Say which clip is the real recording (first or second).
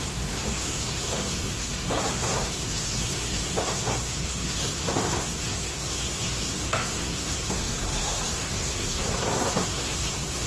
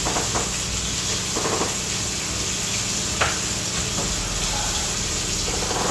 second